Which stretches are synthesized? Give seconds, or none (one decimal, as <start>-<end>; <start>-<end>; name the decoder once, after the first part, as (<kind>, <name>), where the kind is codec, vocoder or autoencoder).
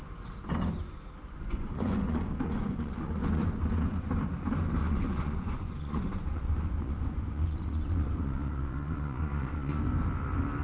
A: 1.2-4.1 (vocoder, Vocos); 4.8-9.8